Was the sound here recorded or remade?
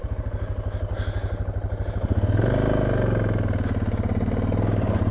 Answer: recorded